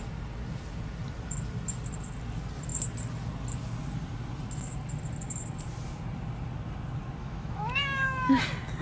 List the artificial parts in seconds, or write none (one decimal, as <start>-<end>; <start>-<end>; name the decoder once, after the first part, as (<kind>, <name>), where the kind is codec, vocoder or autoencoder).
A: 7.2-8.4 (autoencoder, DAC-VAE)